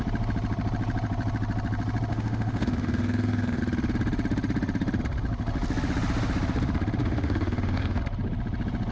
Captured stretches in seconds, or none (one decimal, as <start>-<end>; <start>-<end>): 0.0-2.1; 3.6-7.0; 8.0-8.9